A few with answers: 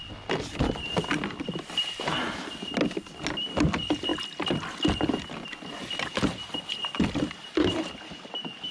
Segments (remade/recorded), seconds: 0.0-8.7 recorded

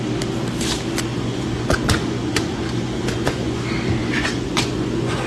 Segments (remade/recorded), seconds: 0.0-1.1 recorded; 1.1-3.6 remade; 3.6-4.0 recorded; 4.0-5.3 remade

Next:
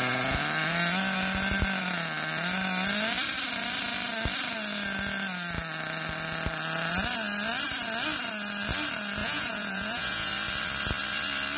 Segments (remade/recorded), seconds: 0.0-9.2 recorded; 9.2-10.3 remade; 10.3-11.6 recorded

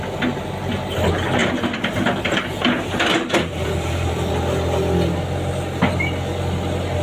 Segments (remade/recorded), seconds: 0.0-1.4 recorded; 1.4-4.3 remade; 4.3-7.0 recorded

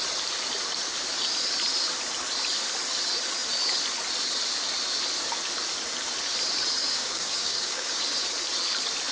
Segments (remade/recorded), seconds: 0.0-6.8 recorded; 6.8-8.0 remade; 8.0-9.1 recorded